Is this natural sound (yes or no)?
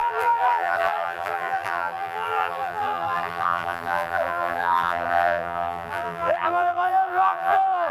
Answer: no